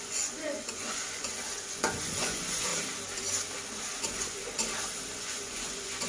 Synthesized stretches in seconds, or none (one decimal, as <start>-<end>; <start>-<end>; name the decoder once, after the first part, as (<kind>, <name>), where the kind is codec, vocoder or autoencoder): 0.0-2.7 (vocoder, Vocos); 4.0-4.4; 5.1-6.1